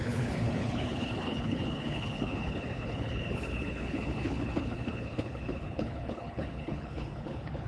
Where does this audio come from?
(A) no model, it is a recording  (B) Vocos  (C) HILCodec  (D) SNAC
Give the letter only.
C